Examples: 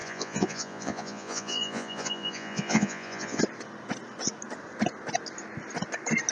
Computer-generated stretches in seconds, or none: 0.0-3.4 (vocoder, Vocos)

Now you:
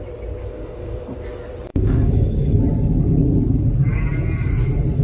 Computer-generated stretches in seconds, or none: 0.4-1.1 (codec, DAC); 1.7-2.6

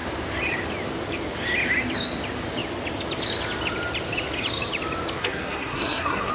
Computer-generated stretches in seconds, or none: 5.2-6.3 (codec, SNAC)

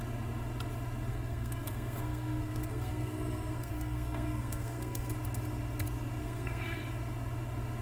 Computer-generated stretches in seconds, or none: 1.1-5.1 (codec, SNAC); 6.2-6.8